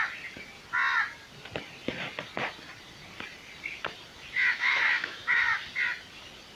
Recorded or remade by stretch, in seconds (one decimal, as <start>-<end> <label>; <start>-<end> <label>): 0.0-4.4 recorded; 4.4-5.4 remade; 5.4-6.5 recorded